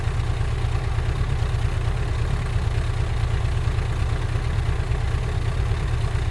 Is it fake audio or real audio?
real